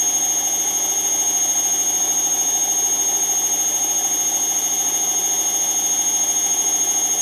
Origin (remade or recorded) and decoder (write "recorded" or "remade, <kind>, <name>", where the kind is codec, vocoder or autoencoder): recorded